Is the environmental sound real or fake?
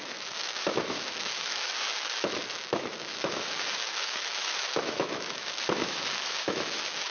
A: fake